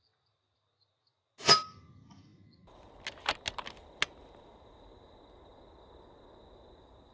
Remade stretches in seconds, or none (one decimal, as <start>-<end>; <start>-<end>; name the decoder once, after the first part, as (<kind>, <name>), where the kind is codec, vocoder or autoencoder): none

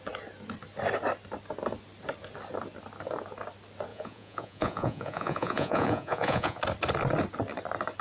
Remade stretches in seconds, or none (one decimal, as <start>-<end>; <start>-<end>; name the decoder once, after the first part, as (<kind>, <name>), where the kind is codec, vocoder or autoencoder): 3.9-6.6 (vocoder, Vocos)

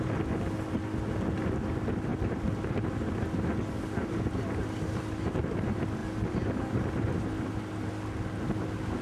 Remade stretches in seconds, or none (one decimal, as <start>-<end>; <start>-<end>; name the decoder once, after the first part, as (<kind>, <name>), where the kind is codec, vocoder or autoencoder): 2.1-2.9 (vocoder, BigVGAN v2)

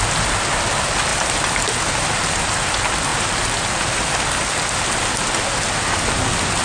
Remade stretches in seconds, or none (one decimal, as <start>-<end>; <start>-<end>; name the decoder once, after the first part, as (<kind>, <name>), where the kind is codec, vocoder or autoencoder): 1.1-1.8 (vocoder, BigVGAN v2); 3.1-4.4

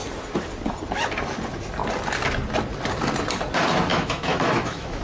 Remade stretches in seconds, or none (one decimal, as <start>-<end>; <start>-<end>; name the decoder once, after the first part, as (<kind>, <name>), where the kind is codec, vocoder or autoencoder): 3.9-5.0 (autoencoder, DAC-VAE)

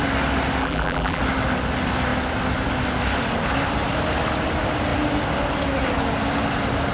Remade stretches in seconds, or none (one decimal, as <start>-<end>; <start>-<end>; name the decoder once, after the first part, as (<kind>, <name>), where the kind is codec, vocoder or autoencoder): 0.6-1.2 (vocoder, BigVGAN v2)